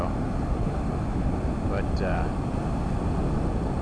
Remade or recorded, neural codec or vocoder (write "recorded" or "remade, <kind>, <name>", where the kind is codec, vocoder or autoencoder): recorded